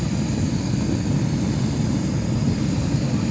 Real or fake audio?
real